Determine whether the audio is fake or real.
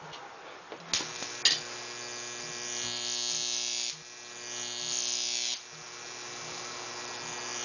real